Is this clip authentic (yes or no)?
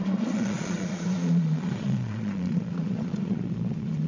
no